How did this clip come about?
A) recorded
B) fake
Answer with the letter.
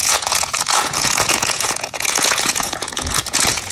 B